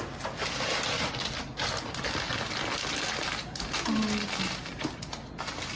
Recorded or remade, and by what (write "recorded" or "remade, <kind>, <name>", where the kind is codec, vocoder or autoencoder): recorded